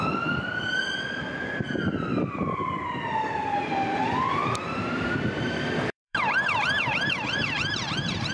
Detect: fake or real fake